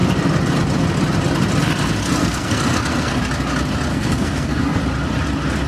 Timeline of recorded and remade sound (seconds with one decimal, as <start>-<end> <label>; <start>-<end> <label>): 0.0-2.2 recorded; 2.2-3.2 remade; 3.2-3.9 recorded; 3.9-4.8 remade; 4.8-5.7 recorded